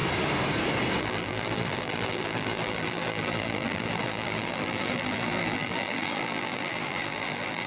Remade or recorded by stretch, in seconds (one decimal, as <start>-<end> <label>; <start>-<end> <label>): 0.0-1.0 recorded; 1.0-7.7 remade